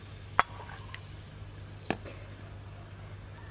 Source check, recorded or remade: recorded